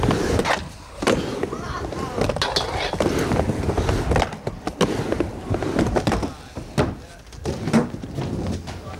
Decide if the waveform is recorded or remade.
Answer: recorded